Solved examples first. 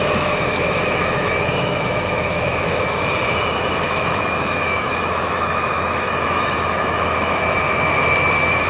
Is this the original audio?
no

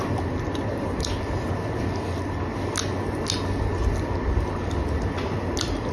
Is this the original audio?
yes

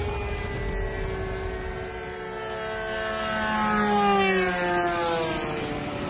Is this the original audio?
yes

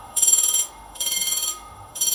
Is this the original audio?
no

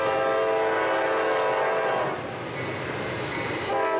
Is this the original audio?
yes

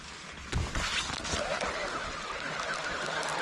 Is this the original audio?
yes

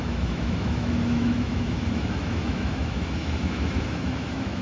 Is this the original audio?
no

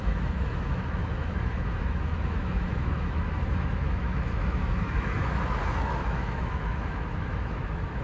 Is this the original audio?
no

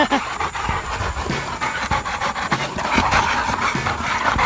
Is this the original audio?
yes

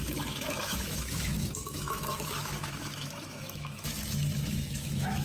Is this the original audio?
no